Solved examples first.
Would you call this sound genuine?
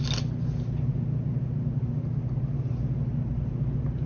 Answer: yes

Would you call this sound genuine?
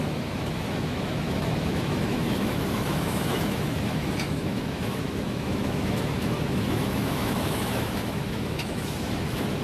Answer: no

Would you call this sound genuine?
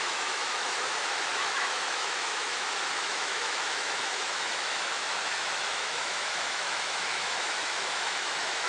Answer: no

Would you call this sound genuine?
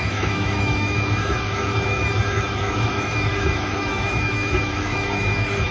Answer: no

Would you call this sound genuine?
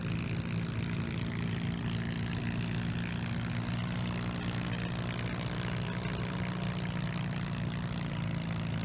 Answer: yes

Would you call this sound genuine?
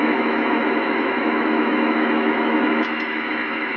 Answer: no